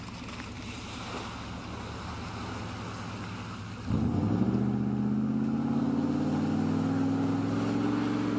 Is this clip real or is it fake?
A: real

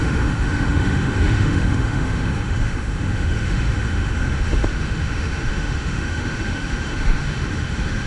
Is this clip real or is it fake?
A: fake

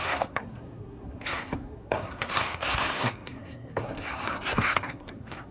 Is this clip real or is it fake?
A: fake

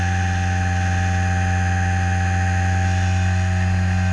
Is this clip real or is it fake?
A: real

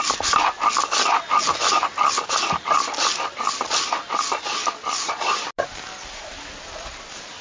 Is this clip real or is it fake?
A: real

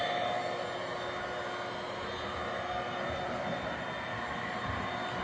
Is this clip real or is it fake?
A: real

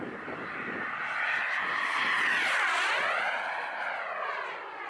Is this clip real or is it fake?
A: real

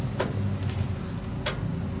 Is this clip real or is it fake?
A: real